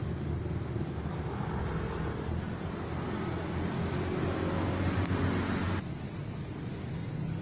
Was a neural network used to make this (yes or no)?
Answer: no